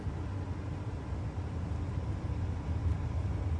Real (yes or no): yes